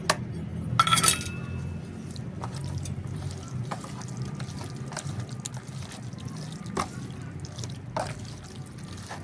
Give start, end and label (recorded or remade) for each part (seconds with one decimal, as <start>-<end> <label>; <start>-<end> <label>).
0.0-2.6 recorded; 2.6-3.2 remade; 3.2-9.2 recorded